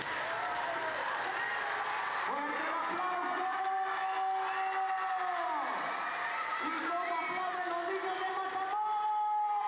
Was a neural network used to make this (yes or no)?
no